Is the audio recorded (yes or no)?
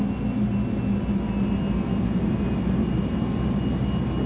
yes